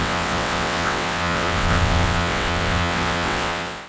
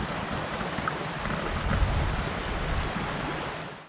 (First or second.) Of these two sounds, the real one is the second